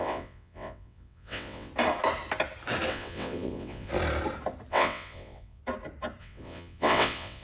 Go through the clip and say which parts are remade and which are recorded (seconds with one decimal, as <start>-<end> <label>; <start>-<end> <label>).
0.0-1.7 remade; 1.7-2.9 recorded; 2.9-3.9 remade; 3.9-4.7 recorded; 4.7-5.6 remade; 5.6-6.2 recorded; 6.2-7.4 remade